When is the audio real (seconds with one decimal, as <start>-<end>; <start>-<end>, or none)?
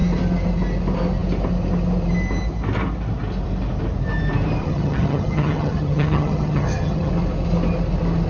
0.0-4.6; 7.1-8.3